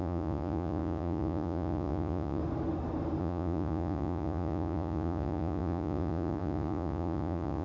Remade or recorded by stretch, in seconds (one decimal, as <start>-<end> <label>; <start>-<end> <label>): 0.0-2.4 remade; 2.4-3.2 recorded; 3.2-7.6 remade